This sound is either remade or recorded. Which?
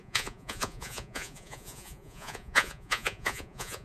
remade